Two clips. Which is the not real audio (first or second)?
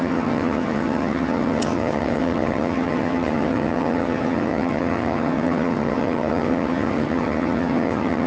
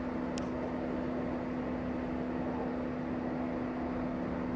first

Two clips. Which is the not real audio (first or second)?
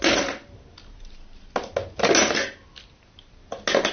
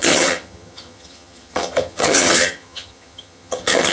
second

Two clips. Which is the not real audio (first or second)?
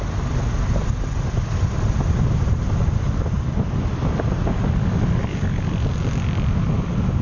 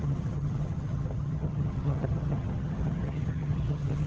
second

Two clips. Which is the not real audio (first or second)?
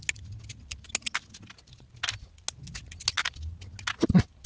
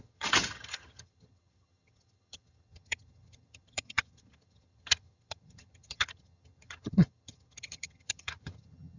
second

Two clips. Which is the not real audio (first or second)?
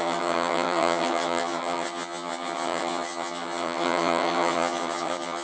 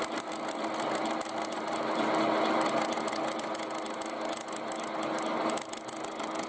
first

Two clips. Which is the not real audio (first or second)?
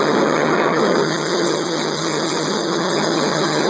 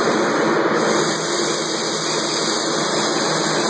first